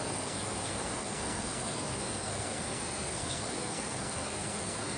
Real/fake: fake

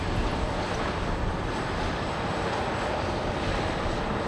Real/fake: real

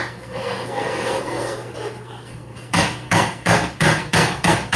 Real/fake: fake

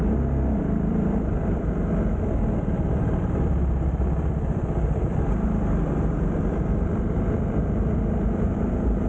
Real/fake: fake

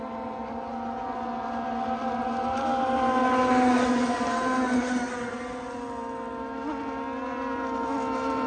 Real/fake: real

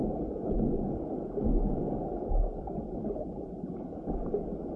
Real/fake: real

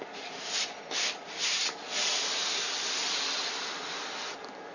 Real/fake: fake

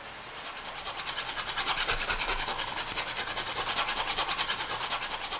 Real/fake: real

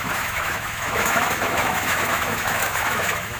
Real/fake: fake